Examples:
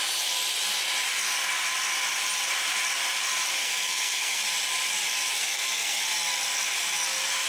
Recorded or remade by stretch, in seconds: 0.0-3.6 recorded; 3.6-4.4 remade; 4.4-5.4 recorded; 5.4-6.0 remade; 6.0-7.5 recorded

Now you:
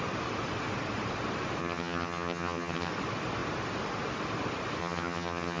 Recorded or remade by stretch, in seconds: 0.0-1.6 recorded; 1.6-2.9 remade; 2.9-4.8 recorded; 4.8-5.6 remade

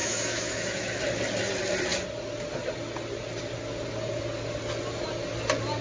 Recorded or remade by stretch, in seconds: 0.0-1.0 remade; 1.0-5.8 recorded

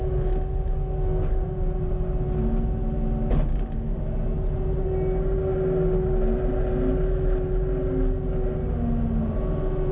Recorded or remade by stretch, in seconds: 0.0-9.9 recorded

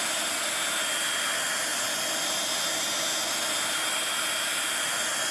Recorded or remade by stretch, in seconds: 0.0-5.3 recorded

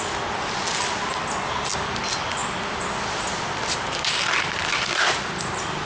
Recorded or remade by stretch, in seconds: 0.0-2.4 recorded; 2.4-3.7 remade; 3.7-5.8 recorded

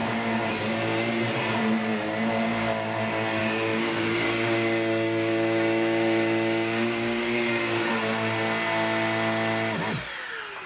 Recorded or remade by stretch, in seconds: 0.0-3.4 recorded; 3.4-7.9 remade; 7.9-10.7 recorded